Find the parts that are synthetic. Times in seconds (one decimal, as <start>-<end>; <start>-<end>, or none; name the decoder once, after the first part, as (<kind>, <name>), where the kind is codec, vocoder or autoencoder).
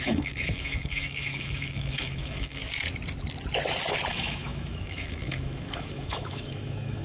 0.0-2.6 (autoencoder, DAC-VAE); 4.1-7.0